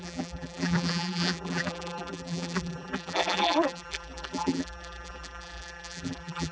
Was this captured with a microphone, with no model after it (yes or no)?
no